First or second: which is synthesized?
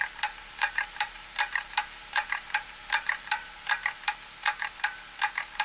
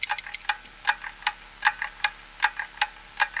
first